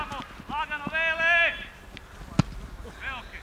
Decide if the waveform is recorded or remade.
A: recorded